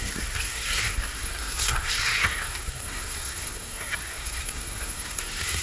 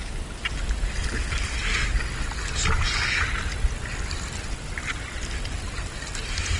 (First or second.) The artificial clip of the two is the first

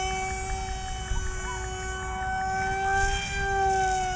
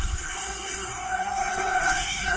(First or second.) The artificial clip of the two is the second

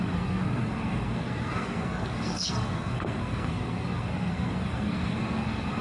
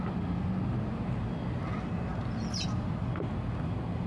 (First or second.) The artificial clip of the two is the first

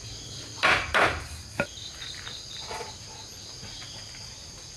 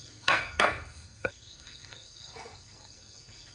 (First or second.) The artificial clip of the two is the second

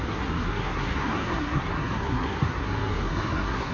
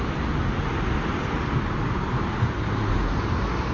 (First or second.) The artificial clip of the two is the first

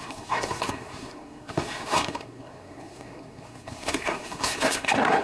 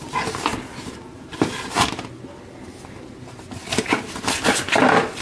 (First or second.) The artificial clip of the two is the first